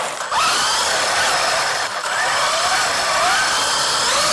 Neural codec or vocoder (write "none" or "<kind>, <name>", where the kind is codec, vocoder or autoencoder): none